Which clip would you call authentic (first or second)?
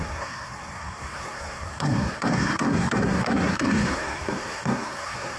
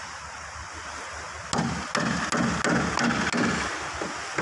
second